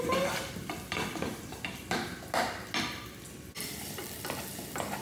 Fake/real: real